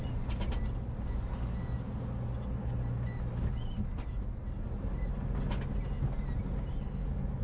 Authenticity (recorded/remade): recorded